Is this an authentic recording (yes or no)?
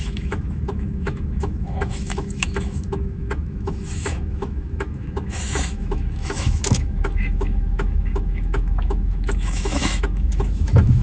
no